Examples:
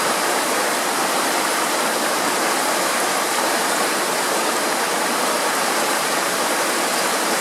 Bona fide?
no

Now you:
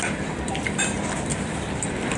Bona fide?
yes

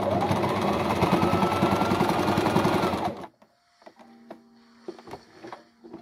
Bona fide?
yes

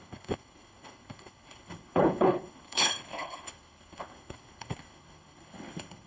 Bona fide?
no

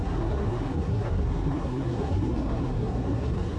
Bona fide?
no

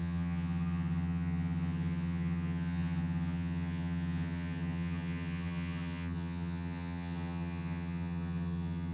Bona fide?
no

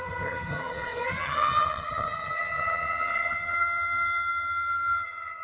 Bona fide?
no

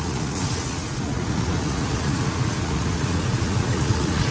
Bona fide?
no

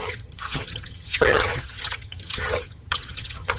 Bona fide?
no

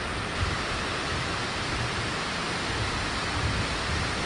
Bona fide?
no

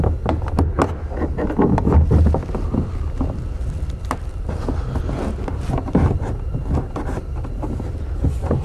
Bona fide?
yes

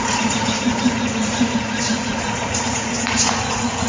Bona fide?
no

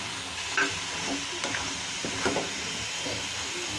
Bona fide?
yes